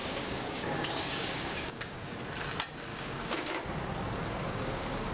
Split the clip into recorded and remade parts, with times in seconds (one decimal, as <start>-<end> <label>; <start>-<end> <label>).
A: 0.0-2.2 remade; 2.2-2.9 recorded; 2.9-3.5 remade; 3.5-4.4 recorded; 4.4-5.1 remade